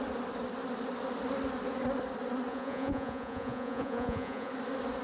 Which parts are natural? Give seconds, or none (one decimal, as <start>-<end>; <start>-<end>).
0.0-2.5; 4.5-5.0